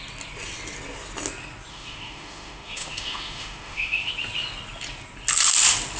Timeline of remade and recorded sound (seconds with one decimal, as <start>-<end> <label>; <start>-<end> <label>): 0.0-1.7 recorded; 1.7-4.1 remade; 4.1-6.0 recorded